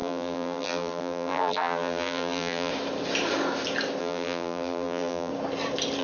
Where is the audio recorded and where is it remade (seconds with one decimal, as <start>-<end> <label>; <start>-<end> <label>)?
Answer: 0.0-2.7 remade; 2.7-4.0 recorded; 4.0-5.3 remade; 5.3-6.0 recorded